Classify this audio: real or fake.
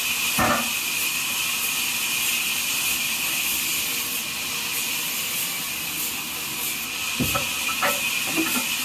real